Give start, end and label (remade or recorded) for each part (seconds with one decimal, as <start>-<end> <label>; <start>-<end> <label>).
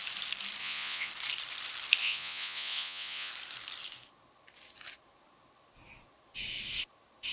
0.0-0.6 recorded; 0.6-1.1 remade; 1.1-2.0 recorded; 2.0-3.3 remade; 3.3-7.3 recorded